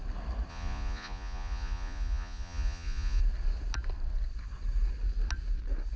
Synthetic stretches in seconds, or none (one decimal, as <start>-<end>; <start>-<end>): 0.5-3.2